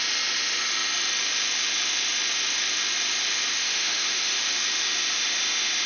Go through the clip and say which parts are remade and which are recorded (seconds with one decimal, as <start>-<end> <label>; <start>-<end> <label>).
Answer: 0.0-3.6 recorded; 3.6-4.4 remade; 4.4-5.9 recorded